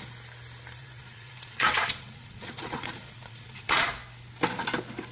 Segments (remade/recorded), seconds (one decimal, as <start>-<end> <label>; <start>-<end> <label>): 0.0-0.8 recorded; 0.8-3.9 remade; 3.9-5.1 recorded